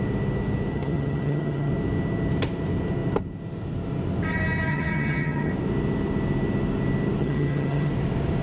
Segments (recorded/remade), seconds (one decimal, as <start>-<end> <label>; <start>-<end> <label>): 0.0-0.7 recorded; 0.7-1.7 remade; 1.7-4.7 recorded; 4.7-5.5 remade; 5.5-7.2 recorded; 7.2-7.9 remade; 7.9-8.4 recorded